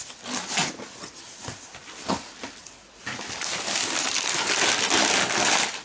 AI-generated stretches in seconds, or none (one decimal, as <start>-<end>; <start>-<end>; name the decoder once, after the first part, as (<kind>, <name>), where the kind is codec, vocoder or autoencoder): none

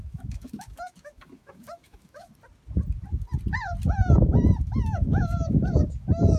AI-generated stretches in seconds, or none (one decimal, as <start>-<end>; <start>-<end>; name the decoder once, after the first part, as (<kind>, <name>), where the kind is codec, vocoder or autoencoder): 0.0-2.3 (autoencoder, DAC-VAE); 4.6-6.4

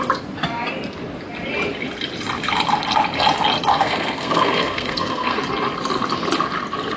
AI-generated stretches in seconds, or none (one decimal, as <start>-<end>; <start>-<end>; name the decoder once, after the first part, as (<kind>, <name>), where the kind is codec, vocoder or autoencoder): 3.7-5.4 (codec, SNAC)

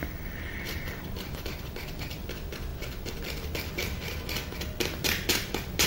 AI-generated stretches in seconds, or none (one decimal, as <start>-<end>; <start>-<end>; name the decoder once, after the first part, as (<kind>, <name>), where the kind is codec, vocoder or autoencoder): 0.0-2.0 (vocoder, BigVGAN v2); 2.7-3.2